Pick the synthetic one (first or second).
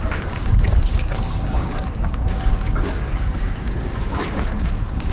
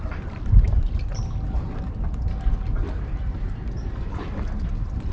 first